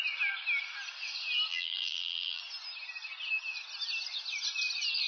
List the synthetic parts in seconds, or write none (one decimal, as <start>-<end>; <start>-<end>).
1.5-2.4